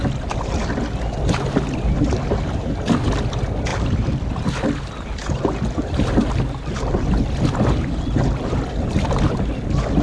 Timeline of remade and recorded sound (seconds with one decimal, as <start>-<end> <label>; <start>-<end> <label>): 0.0-10.0 recorded